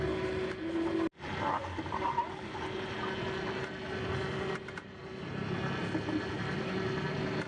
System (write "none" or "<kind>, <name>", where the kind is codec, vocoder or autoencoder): none